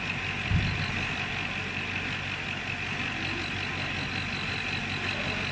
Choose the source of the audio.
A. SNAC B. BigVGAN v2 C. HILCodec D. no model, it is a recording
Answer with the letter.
D